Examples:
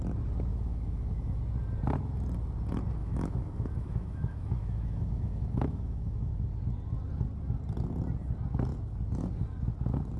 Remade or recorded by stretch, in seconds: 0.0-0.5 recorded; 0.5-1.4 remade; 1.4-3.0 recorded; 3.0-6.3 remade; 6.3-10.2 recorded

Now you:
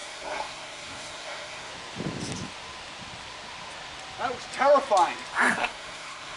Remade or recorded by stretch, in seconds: 0.0-1.7 remade; 1.7-5.5 recorded; 5.5-6.4 remade

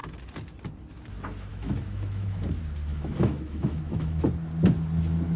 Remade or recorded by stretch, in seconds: 0.0-1.5 recorded; 1.5-2.5 remade; 2.5-2.9 recorded; 2.9-4.3 remade; 4.3-5.4 recorded